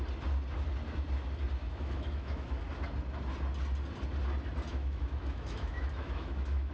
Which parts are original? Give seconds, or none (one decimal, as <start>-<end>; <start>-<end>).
0.0-1.6; 2.6-4.7